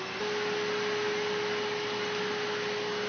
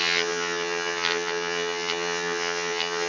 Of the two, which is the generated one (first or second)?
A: second